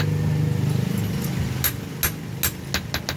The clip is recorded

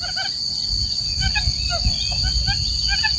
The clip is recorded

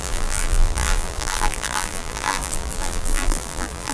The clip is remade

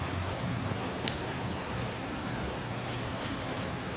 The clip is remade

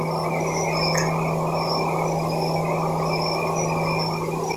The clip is recorded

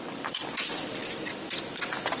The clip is recorded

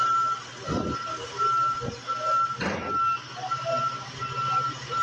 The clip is recorded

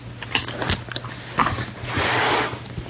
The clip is recorded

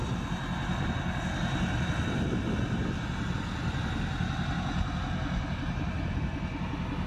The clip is recorded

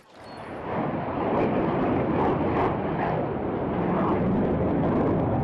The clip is recorded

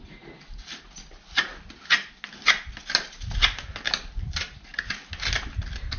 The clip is recorded